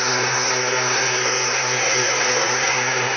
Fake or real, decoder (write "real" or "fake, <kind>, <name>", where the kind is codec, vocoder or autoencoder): fake, codec, SNAC